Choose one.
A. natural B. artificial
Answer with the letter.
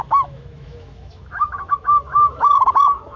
B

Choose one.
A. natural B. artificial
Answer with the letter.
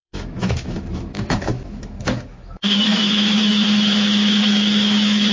B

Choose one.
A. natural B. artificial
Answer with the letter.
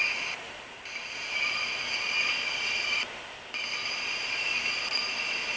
A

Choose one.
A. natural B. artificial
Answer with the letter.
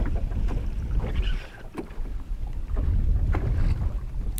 A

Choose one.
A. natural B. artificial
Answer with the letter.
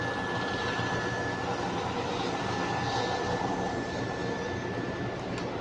A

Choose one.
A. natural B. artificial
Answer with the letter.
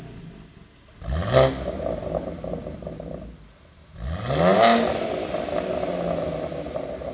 A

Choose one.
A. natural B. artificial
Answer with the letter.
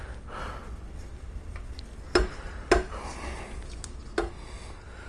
A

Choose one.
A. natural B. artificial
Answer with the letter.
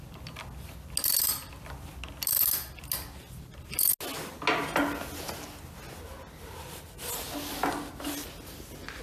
A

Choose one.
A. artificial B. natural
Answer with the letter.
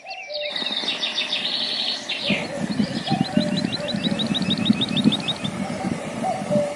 B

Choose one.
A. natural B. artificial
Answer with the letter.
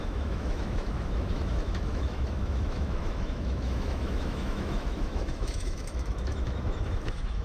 B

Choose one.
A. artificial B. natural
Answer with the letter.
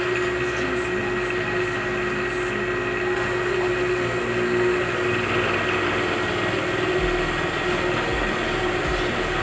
B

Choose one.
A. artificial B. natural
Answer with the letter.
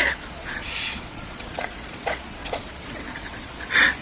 A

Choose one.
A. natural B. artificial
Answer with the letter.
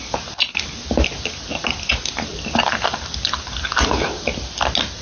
A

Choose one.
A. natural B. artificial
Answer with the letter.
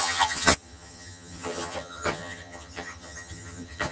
B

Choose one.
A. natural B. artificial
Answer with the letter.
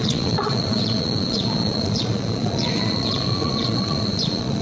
B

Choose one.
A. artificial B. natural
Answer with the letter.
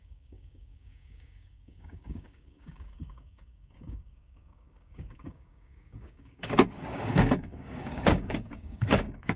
A